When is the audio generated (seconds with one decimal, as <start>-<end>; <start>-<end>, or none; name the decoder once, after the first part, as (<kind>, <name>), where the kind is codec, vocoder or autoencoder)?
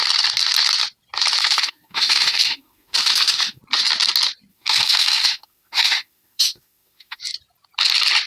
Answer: 1.4-3.6 (autoencoder, DAC-VAE); 4.5-7.2